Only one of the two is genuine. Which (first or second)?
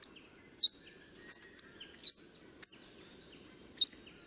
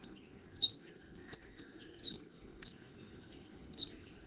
first